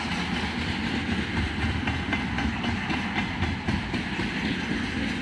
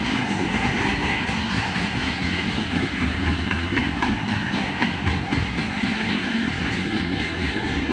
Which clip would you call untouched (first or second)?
first